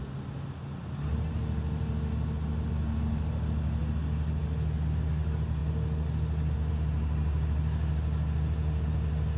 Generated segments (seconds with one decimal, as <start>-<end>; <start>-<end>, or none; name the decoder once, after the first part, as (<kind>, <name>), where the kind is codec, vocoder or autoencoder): none